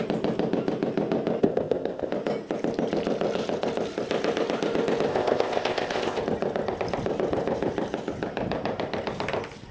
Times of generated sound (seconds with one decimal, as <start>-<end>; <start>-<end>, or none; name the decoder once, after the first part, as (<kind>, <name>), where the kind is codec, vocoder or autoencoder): 1.4-2.1 (codec, ZipCodec); 5.1-6.2